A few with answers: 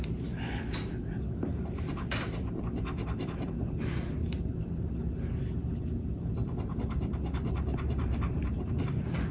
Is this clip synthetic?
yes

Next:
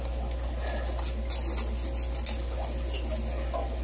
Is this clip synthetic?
no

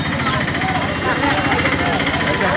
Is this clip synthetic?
yes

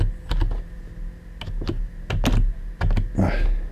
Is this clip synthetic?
no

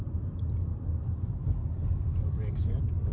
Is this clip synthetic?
no